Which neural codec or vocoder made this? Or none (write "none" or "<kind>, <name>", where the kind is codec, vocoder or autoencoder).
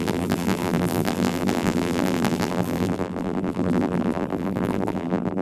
vocoder, BigVGAN v2